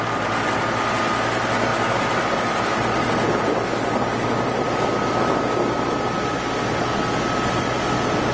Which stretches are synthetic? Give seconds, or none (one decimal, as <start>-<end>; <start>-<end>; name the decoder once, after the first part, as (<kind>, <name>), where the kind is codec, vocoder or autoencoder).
none